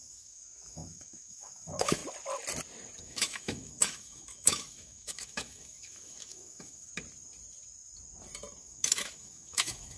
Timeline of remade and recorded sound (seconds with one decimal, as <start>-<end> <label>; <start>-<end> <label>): 0.0-2.0 remade; 2.0-3.0 recorded; 3.0-6.9 remade; 6.9-8.6 recorded; 8.6-10.0 remade